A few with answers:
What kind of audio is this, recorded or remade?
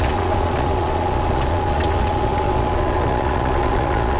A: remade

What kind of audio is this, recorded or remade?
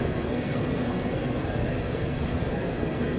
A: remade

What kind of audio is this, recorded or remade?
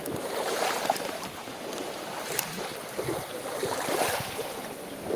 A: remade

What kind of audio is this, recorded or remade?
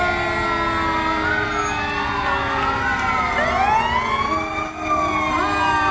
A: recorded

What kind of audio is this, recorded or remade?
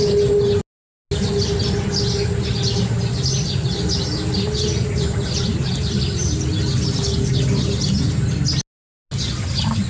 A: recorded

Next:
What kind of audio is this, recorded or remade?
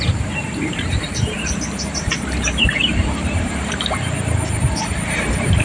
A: remade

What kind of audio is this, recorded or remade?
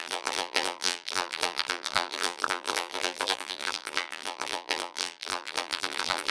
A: remade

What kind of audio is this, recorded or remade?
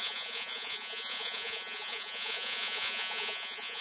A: remade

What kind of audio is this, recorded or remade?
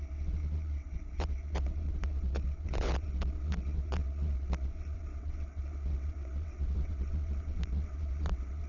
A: remade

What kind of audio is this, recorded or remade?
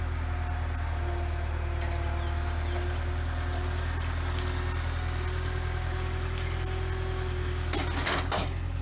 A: recorded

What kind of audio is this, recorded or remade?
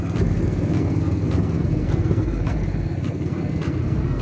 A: remade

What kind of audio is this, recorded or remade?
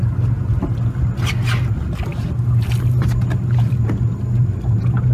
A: recorded